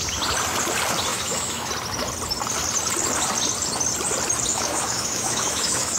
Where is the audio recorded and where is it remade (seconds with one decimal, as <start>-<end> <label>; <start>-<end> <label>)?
0.0-1.1 recorded; 1.1-1.7 remade; 1.7-4.5 recorded; 4.5-6.0 remade